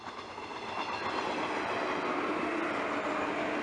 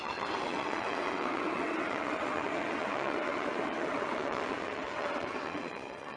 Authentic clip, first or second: first